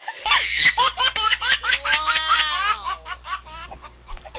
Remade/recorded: remade